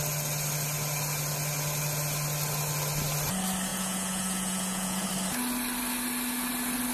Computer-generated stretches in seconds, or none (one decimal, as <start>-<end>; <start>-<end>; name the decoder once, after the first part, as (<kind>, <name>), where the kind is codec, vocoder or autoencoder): 3.7-5.1 (vocoder, Vocos)